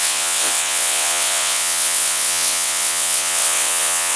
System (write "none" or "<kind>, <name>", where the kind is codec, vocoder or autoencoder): vocoder, WaveNeXt